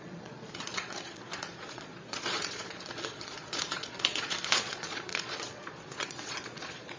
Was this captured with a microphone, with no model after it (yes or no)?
no